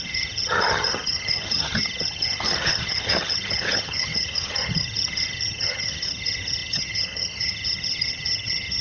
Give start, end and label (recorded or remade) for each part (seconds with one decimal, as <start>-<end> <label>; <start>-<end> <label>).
0.0-8.8 remade